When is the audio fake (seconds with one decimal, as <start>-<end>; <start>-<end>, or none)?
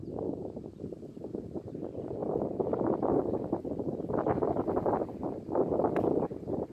none